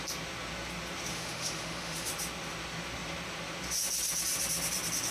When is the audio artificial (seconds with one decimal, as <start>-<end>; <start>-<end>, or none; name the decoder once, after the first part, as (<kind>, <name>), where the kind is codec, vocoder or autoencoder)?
1.1-2.1 (autoencoder, DAC-VAE)